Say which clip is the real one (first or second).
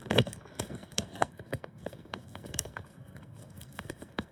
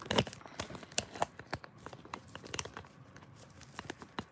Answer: second